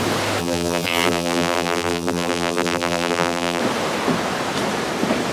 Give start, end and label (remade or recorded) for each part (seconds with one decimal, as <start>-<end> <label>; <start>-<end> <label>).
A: 0.0-0.4 recorded; 0.4-3.6 remade; 3.6-5.3 recorded